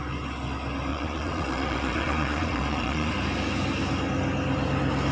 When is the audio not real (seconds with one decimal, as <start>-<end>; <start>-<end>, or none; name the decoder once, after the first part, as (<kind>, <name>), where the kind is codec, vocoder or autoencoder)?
0.9-3.1 (vocoder, Vocos)